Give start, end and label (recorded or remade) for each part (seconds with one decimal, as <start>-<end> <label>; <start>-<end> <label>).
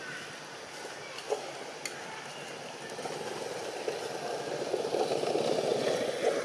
0.0-5.7 recorded; 5.7-6.4 remade